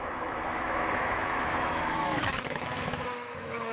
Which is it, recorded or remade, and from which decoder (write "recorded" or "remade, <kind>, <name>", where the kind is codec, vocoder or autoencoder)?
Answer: remade, autoencoder, DAC-VAE